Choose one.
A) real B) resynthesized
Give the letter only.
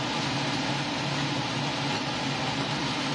A